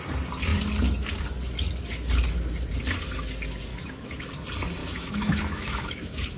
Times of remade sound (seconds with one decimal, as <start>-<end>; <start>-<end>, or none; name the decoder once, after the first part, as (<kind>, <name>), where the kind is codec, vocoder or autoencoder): 3.7-4.3 (autoencoder, DAC-VAE); 4.8-6.4